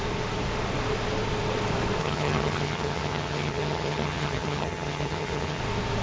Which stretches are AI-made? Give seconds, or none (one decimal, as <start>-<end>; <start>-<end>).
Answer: 2.0-5.6